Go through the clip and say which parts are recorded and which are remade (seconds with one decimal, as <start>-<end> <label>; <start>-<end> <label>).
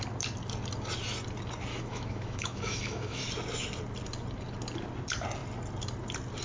0.0-1.7 recorded; 1.7-3.2 remade; 3.2-6.4 recorded